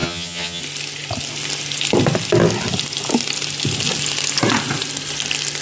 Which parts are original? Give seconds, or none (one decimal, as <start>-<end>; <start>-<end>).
0.6-5.6